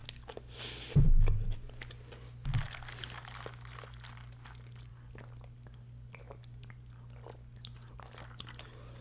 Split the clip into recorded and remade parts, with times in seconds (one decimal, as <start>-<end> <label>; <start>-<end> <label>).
0.0-9.0 recorded

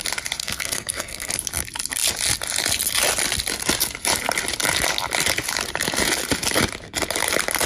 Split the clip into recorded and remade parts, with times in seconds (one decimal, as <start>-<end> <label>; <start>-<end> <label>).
0.0-0.4 recorded; 0.4-1.3 remade; 1.3-7.7 recorded

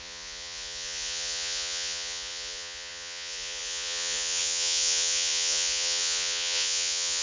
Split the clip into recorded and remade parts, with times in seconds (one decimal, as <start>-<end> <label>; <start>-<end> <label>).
0.0-7.2 remade

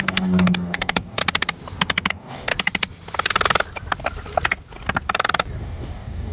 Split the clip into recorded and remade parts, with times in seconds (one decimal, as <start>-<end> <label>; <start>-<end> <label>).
0.0-1.2 remade; 1.2-2.1 recorded; 2.1-2.5 remade; 2.5-5.6 recorded; 5.6-6.3 remade

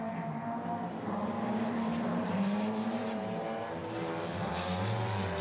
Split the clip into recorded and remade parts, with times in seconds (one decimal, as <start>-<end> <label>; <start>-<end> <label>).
0.0-5.4 remade

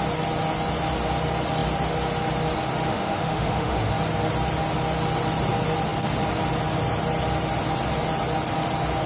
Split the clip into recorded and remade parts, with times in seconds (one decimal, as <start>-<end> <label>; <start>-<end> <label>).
0.0-2.9 recorded; 2.9-3.9 remade; 3.9-9.1 recorded

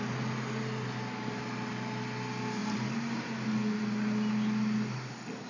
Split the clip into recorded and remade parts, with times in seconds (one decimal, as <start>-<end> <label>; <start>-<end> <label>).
0.0-5.5 recorded